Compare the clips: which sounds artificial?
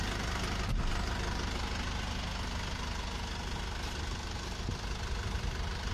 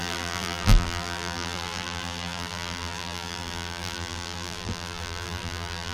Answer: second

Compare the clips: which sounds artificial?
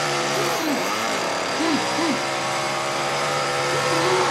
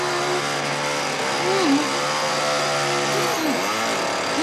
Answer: first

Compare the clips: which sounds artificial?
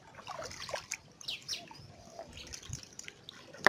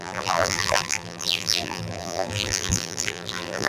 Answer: second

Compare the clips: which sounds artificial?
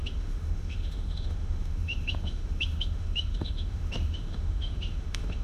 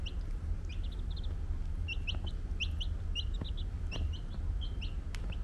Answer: first